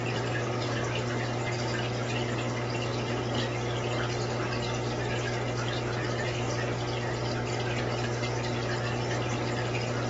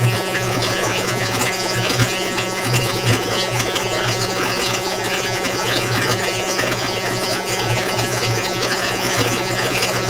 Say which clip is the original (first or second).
first